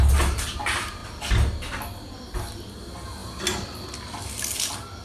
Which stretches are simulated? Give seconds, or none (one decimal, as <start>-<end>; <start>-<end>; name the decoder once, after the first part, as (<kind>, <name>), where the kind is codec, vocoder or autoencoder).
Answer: none